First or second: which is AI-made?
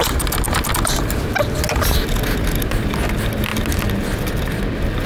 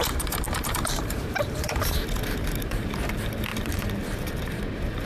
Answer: second